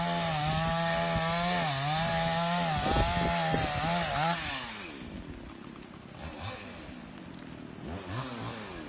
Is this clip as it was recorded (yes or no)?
yes